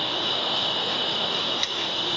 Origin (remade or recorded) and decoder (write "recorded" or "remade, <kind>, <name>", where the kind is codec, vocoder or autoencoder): remade, autoencoder, DAC-VAE